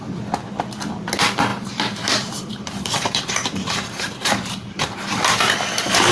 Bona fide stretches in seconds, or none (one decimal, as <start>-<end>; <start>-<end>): 0.0-1.5; 5.2-6.1

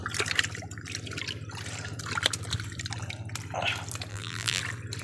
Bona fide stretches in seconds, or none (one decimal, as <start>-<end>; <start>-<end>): 0.0-4.1; 4.6-5.0